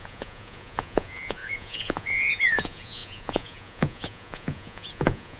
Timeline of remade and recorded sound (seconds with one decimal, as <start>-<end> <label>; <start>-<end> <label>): 0.0-5.4 remade